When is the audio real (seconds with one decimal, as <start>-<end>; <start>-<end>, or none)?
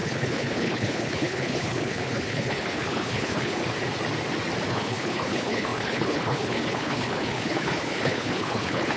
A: 3.6-4.7